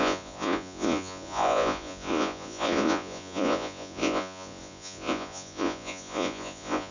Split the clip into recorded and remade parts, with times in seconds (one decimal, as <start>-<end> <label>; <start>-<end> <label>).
0.0-6.9 remade